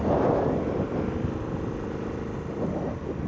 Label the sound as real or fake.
real